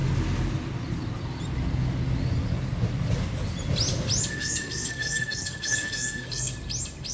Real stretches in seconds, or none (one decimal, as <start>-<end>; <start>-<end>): 0.0-4.3; 6.5-7.1